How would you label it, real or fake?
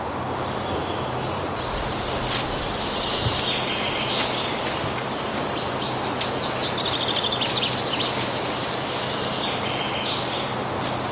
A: real